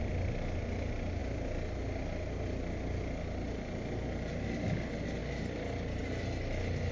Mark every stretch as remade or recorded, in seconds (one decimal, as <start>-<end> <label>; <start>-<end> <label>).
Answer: 0.0-6.9 recorded